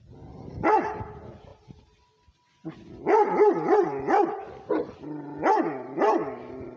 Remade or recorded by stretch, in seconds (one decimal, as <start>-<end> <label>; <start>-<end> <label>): 0.0-6.8 recorded